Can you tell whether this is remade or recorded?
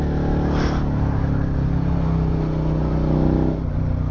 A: recorded